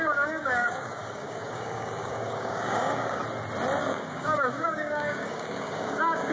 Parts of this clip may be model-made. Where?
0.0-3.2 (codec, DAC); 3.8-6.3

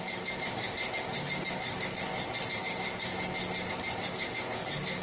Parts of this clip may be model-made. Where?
0.0-2.1 (codec, DAC); 2.6-3.1; 3.7-5.0